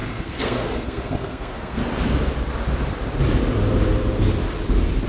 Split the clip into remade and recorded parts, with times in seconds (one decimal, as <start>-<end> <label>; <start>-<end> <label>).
0.0-1.8 remade; 1.8-5.1 recorded

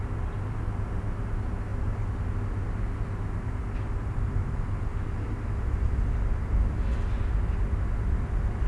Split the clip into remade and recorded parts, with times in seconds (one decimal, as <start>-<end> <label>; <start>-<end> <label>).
0.0-8.7 recorded

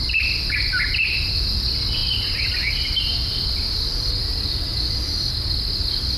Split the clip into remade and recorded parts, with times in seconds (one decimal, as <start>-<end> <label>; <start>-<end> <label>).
0.0-6.2 recorded

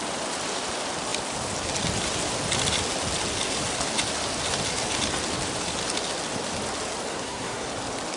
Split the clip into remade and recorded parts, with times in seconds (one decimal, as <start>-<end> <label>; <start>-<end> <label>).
0.0-7.1 recorded; 7.1-7.7 remade; 7.7-8.2 recorded

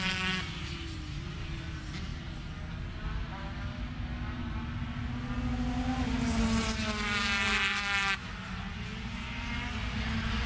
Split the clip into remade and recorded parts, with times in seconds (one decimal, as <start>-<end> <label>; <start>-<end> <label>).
0.0-10.5 recorded

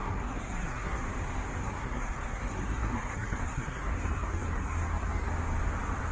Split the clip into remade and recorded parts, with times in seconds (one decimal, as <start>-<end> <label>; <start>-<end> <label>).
0.0-1.0 remade; 1.0-1.6 recorded; 1.6-5.3 remade; 5.3-6.1 recorded